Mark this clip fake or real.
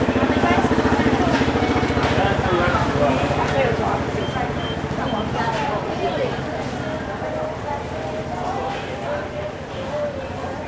real